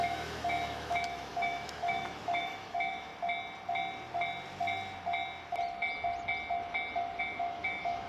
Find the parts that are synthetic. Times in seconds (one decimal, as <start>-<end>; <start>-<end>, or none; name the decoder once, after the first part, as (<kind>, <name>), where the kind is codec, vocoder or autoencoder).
0.0-3.1 (autoencoder, DAC-VAE); 7.2-8.1

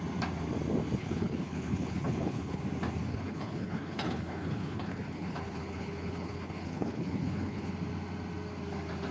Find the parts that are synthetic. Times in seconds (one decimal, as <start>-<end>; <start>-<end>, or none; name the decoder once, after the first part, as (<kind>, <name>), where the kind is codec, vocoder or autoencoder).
1.0-2.6 (codec, HILCodec); 3.1-7.7

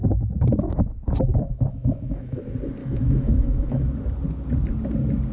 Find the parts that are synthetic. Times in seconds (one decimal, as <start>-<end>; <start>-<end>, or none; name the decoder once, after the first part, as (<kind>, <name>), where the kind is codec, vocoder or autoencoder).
1.3-2.4 (autoencoder, DAC-VAE); 2.8-3.8

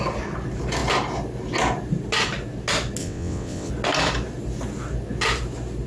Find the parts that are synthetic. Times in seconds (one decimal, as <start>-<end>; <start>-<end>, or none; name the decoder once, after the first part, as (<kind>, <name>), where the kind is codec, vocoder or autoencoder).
3.0-3.7 (vocoder, WaveNeXt)

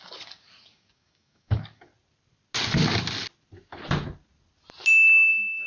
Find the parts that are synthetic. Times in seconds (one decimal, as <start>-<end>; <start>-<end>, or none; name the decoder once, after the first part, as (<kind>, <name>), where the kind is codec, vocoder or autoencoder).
0.0-1.9 (codec, DAC); 5.3-5.7

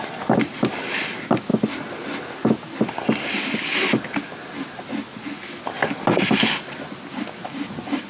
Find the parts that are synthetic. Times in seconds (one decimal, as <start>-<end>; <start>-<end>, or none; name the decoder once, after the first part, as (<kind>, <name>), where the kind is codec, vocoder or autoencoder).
none

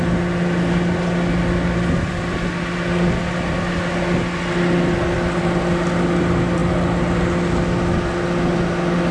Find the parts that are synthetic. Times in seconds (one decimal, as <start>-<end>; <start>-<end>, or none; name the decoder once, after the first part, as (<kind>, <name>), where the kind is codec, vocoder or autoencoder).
none